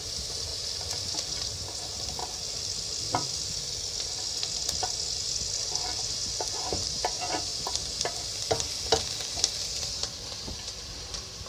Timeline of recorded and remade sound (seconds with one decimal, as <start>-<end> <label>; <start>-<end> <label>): 0.0-0.5 remade; 0.5-1.1 recorded; 1.1-2.2 remade; 2.2-5.6 recorded; 5.6-7.5 remade; 7.5-9.0 recorded; 9.0-10.0 remade; 10.0-10.5 recorded; 10.5-11.5 remade